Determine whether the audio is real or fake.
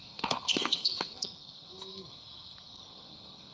fake